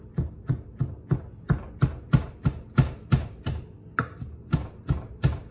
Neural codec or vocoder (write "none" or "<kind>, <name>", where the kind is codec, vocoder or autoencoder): none